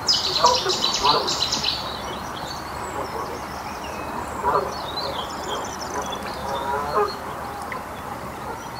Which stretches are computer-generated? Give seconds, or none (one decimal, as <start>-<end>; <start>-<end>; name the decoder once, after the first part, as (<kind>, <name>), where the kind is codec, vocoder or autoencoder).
6.4-7.2 (autoencoder, DAC-VAE)